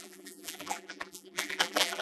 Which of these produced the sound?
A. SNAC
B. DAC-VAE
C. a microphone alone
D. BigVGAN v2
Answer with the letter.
D